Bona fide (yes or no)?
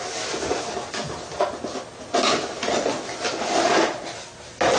yes